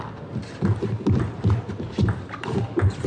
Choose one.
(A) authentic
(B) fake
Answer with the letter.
A